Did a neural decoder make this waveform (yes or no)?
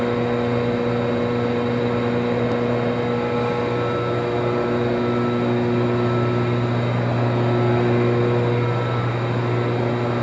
no